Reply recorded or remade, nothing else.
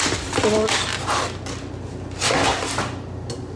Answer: recorded